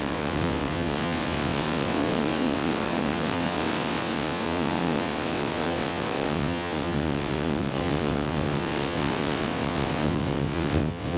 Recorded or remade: remade